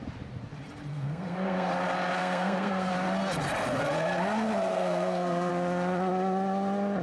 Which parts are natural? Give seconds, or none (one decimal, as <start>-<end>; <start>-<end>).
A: 0.0-0.9; 1.7-2.2; 2.9-4.7; 5.5-7.0